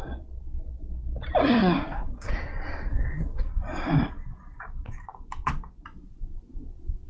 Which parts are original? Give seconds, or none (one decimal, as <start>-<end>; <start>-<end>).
0.0-1.4; 2.3-2.9; 3.5-7.1